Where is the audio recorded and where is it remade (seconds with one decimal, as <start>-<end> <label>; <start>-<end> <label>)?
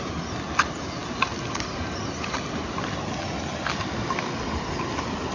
0.0-5.3 recorded